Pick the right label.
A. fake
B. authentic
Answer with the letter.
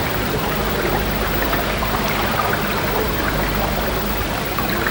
A